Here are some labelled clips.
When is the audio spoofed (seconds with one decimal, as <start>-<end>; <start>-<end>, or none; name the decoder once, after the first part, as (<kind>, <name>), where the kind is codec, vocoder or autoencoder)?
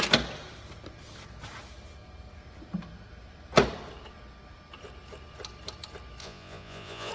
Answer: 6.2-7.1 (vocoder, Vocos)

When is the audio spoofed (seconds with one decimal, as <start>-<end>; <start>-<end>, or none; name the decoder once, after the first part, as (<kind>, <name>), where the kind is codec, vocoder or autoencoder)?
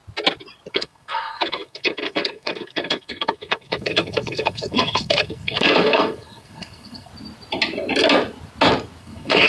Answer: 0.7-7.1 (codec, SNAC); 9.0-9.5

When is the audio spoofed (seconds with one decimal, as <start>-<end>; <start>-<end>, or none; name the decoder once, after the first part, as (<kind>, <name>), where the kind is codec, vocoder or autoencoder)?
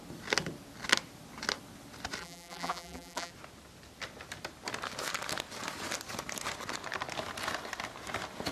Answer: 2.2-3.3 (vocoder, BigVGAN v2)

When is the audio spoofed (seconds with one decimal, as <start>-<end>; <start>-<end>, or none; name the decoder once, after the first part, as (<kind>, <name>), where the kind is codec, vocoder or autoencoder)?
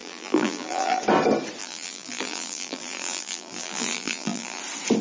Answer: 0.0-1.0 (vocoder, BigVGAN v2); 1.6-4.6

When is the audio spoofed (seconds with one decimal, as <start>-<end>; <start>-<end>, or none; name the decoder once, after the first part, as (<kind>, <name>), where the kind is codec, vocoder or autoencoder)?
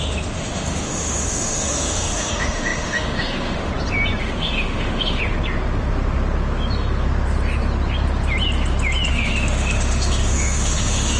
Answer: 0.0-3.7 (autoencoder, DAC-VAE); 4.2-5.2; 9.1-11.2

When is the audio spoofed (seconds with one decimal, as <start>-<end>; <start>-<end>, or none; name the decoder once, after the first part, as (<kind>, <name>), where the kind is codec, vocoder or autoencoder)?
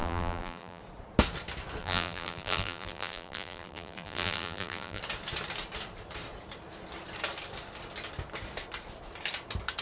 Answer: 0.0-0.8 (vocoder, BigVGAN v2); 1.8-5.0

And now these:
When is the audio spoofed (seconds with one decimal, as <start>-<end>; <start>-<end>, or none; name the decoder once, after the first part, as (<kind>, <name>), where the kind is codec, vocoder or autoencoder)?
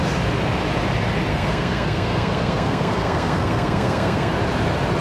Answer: 1.3-4.3 (codec, SNAC)